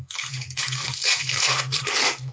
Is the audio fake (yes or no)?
yes